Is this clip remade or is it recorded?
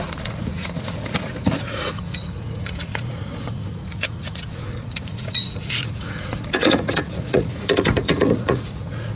remade